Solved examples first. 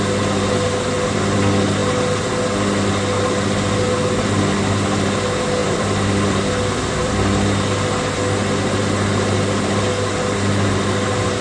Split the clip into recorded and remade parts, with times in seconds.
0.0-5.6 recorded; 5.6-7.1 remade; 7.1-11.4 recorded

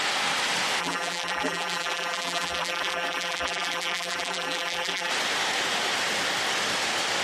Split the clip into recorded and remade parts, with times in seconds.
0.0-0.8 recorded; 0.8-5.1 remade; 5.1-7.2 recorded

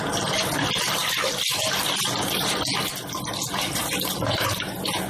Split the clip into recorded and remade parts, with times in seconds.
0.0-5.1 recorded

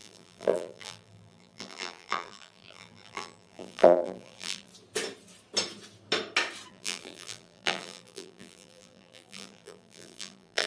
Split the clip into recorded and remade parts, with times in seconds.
0.0-4.7 remade; 4.7-6.7 recorded; 6.7-10.7 remade

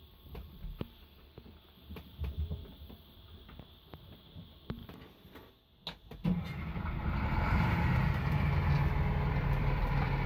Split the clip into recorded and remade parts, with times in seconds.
0.0-4.8 remade; 4.8-9.3 recorded; 9.3-10.3 remade

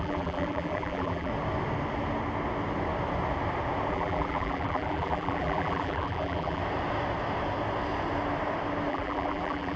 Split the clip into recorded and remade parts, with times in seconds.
0.0-1.3 remade; 1.3-3.9 recorded; 3.9-6.6 remade; 6.6-8.9 recorded; 8.9-9.8 remade

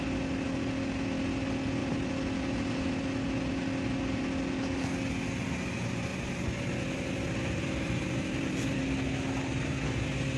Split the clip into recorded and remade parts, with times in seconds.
0.0-1.8 recorded; 1.8-2.9 remade; 2.9-6.1 recorded; 6.1-8.8 remade; 8.8-10.4 recorded